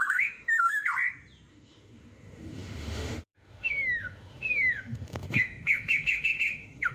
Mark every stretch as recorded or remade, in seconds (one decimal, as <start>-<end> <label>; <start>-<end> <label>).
0.0-0.9 remade; 0.9-1.5 recorded; 1.5-6.9 remade